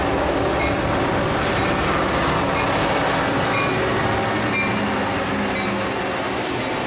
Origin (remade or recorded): recorded